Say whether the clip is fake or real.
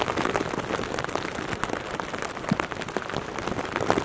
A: real